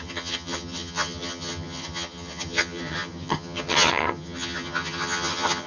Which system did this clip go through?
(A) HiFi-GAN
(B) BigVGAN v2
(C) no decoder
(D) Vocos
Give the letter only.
A